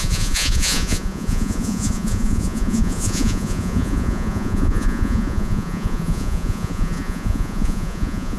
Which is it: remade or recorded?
remade